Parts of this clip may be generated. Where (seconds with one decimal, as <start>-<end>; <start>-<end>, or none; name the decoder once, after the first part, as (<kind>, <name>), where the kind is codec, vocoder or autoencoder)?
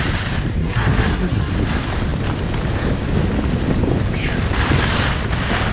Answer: 0.6-1.5 (codec, SNAC)